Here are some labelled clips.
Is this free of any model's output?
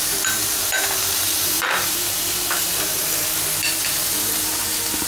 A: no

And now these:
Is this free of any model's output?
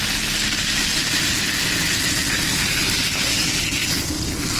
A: yes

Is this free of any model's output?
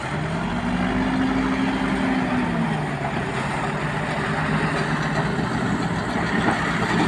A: yes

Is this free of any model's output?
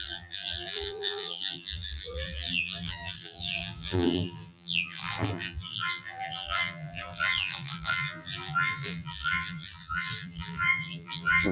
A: no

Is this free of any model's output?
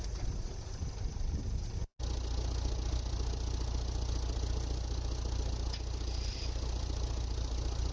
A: yes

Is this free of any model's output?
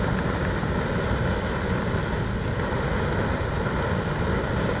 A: yes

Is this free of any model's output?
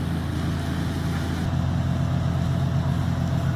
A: yes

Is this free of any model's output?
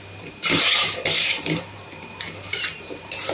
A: no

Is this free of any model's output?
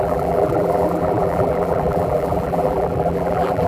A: no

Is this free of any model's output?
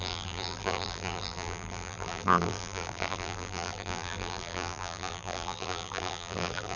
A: no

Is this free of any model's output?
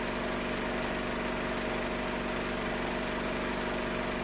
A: yes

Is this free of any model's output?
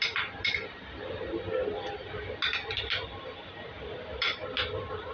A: yes